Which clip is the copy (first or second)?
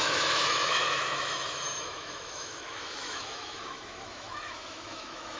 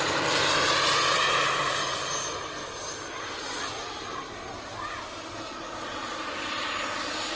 first